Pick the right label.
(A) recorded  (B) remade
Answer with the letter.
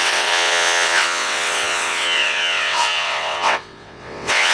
B